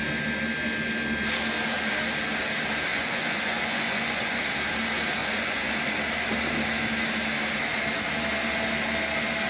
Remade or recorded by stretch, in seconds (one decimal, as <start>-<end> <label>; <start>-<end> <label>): 0.0-2.9 recorded; 2.9-4.4 remade; 4.4-5.2 recorded; 5.2-5.7 remade; 5.7-9.5 recorded